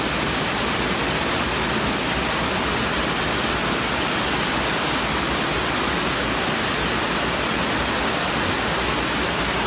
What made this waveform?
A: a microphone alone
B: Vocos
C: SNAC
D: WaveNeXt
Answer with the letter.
A